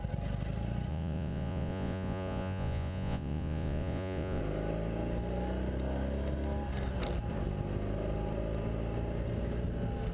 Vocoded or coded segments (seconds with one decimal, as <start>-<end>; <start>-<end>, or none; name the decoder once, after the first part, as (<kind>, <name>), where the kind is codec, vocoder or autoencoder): 0.9-4.4 (vocoder, Vocos)